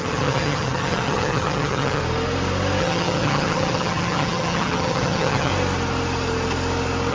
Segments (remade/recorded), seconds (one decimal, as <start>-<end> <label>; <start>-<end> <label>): 0.0-2.0 remade; 2.0-2.8 recorded; 2.8-5.5 remade; 5.5-7.1 recorded